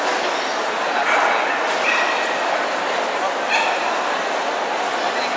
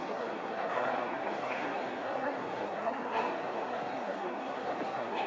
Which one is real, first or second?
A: first